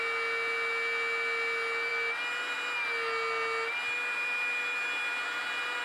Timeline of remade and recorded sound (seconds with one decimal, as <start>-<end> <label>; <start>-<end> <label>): 0.0-5.8 recorded